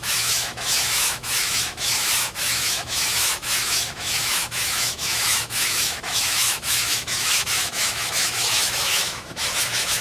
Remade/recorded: remade